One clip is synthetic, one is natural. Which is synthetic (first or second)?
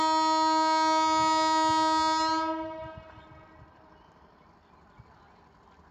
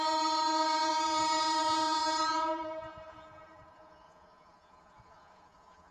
second